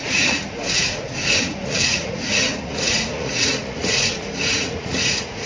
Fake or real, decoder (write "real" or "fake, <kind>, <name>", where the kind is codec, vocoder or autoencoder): fake, vocoder, Vocos